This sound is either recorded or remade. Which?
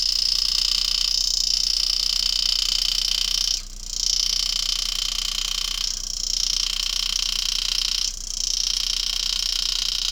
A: recorded